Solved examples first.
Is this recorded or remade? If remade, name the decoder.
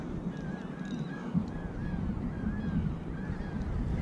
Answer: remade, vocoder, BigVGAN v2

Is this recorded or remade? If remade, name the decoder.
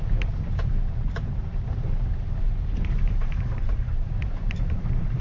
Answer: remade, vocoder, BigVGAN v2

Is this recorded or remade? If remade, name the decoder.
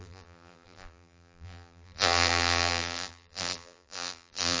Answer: remade, vocoder, BigVGAN v2